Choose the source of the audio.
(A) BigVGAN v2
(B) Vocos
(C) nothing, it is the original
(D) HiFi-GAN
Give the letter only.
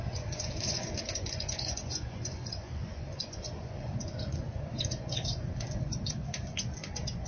B